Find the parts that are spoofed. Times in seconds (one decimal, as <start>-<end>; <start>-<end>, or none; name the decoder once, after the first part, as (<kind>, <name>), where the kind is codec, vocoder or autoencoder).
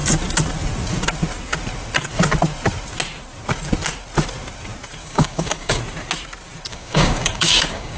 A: 5.0-5.8 (codec, DAC); 6.7-8.0